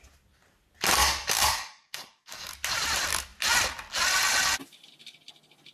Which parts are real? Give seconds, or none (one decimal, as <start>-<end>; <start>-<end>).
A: 0.0-1.0; 2.5-5.7